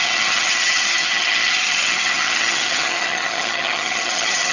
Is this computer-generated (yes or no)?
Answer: yes